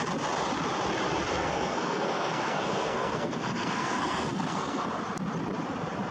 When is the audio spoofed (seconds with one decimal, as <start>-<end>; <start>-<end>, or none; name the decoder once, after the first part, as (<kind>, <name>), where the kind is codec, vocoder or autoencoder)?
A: 1.3-4.9 (codec, SNAC)